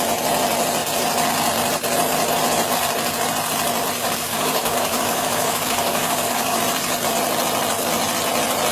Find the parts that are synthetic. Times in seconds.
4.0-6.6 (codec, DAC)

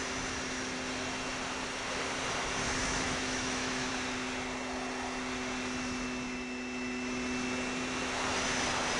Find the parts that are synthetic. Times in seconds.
2.8-3.9 (autoencoder, DAC-VAE)

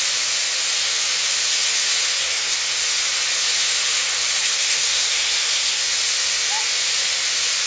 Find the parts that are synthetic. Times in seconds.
2.2-2.7 (codec, SNAC); 4.4-5.8